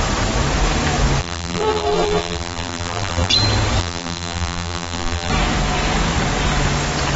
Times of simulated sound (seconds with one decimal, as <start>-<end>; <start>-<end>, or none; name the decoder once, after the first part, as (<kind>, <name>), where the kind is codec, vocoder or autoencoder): 1.2-3.3 (vocoder, BigVGAN v2); 3.8-5.3